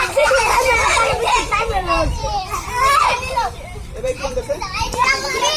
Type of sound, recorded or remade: remade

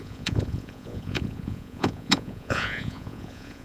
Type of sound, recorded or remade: remade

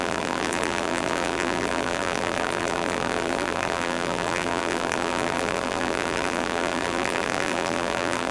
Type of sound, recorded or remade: remade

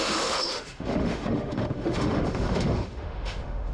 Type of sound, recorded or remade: remade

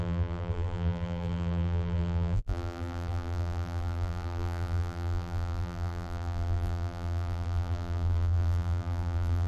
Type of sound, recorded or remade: remade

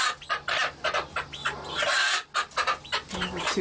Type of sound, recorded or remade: recorded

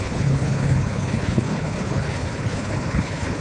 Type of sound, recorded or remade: remade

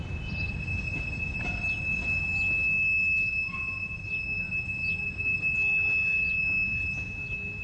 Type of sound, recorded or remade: recorded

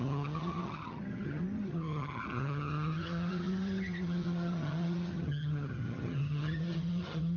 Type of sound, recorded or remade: remade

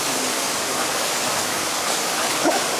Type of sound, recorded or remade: remade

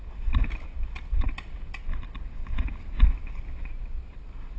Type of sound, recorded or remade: recorded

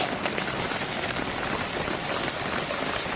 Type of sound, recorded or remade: recorded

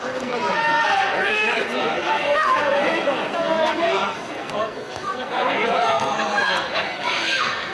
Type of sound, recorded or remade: remade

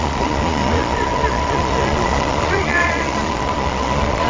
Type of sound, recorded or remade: remade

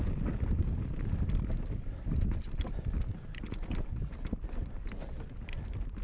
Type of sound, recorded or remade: recorded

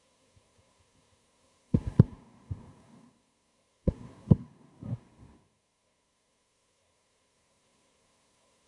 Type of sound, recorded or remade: remade